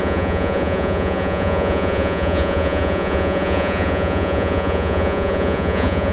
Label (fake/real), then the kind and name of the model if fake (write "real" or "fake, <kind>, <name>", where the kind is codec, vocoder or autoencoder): fake, vocoder, Vocos